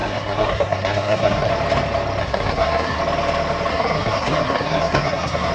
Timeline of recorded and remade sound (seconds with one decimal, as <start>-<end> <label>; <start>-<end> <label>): 0.0-1.5 remade; 1.5-2.2 recorded; 2.2-3.0 remade; 3.0-3.7 recorded; 3.7-5.5 remade